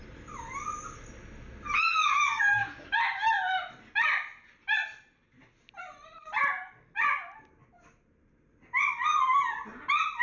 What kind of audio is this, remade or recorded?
recorded